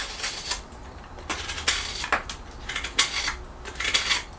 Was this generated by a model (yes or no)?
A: no